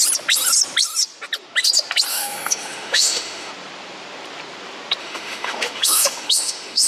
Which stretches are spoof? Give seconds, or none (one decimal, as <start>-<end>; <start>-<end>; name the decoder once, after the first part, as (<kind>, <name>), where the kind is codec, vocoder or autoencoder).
2.1-3.5 (autoencoder, DAC-VAE); 5.0-6.9